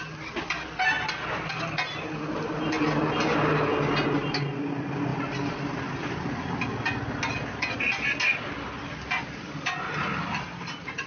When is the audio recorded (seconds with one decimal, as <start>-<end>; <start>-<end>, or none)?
0.0-11.1